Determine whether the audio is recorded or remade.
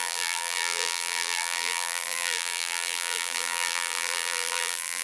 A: remade